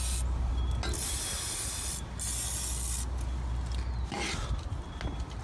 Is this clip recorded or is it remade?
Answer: recorded